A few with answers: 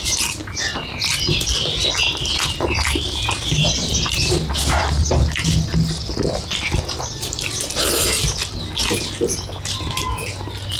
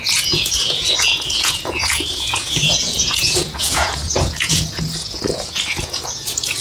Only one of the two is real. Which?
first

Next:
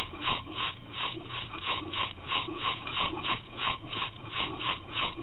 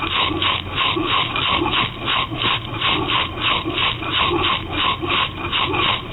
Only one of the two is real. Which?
second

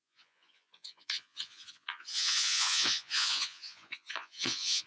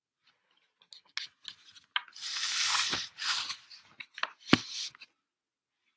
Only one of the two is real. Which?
second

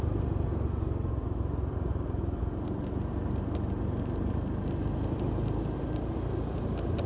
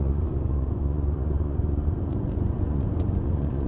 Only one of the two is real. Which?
first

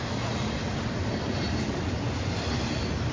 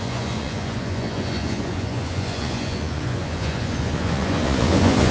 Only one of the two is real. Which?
first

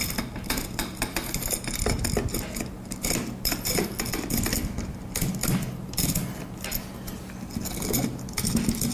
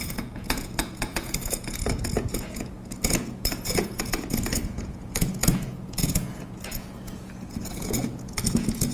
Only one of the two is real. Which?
first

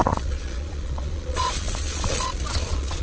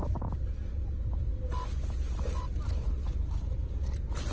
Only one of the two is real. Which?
second